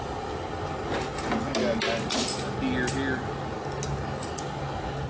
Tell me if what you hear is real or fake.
real